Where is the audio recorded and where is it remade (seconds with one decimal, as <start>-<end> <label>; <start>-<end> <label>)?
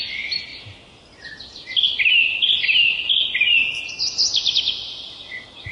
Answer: 0.0-0.5 recorded; 0.5-3.9 remade; 3.9-4.4 recorded; 4.4-5.2 remade; 5.2-5.7 recorded